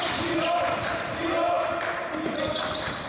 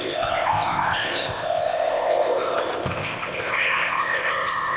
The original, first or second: first